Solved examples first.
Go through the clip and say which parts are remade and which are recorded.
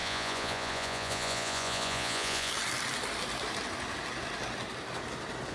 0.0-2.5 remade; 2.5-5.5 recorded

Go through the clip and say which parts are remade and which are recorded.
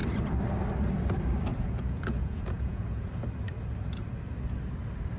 0.0-1.5 recorded; 1.5-3.1 remade; 3.1-5.2 recorded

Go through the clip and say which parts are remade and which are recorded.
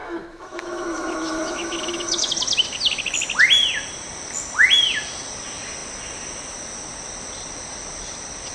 0.0-2.3 remade; 2.3-8.5 recorded